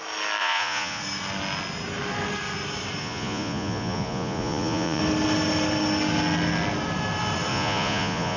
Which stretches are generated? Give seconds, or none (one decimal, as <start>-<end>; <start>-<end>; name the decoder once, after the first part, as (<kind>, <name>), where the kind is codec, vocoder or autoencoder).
0.4-1.0 (vocoder, Vocos); 3.0-5.0; 7.5-8.4